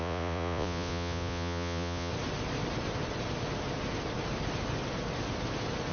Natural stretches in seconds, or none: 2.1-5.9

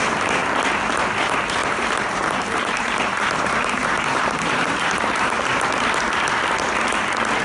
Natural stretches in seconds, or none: 0.0-1.6; 5.3-7.4

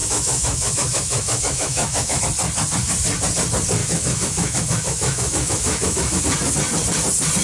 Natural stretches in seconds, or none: 2.2-3.8; 6.2-7.4

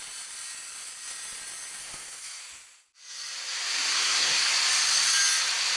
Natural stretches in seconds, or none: 0.0-1.8; 2.4-3.9; 4.5-5.8